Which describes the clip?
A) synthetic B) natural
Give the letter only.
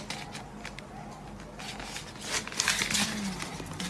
B